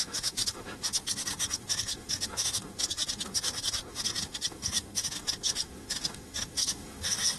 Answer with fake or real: fake